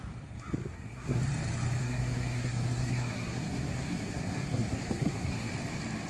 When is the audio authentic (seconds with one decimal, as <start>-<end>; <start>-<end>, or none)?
0.0-0.6; 1.2-1.8; 5.5-6.1